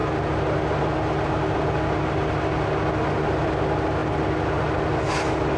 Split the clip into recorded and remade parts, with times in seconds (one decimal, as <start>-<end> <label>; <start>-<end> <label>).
0.0-5.6 recorded